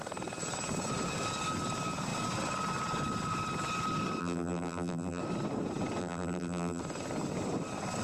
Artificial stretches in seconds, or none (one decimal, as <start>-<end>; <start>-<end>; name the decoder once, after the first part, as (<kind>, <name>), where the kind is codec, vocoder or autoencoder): 4.2-5.2 (vocoder, BigVGAN v2); 6.0-6.8